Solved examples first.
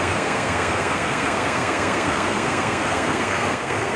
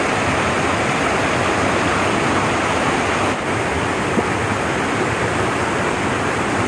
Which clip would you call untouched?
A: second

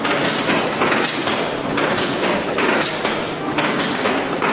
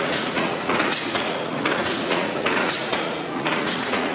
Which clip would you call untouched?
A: first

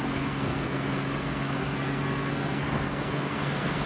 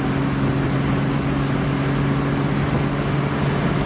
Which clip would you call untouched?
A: second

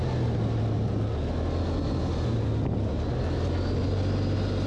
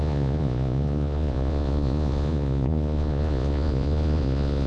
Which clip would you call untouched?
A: first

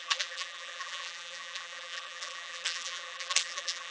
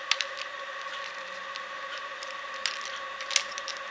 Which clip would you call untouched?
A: second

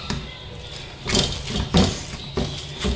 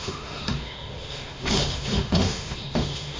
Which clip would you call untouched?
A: first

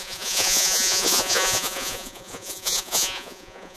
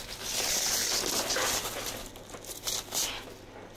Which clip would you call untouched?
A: second